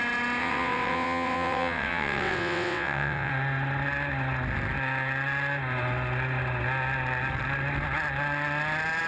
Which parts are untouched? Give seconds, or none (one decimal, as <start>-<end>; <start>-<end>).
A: 0.0-0.4; 3.3-9.1